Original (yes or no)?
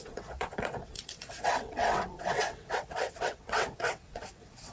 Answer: no